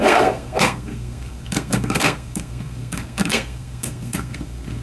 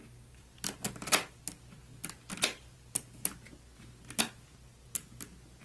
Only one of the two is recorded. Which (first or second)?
second